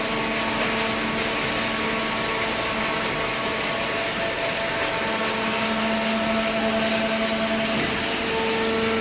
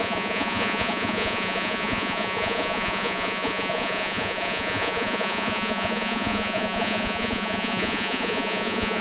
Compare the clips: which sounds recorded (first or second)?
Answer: first